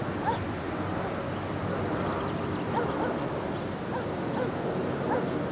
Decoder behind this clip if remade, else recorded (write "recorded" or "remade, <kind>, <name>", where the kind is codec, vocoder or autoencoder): recorded